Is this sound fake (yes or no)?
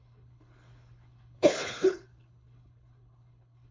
yes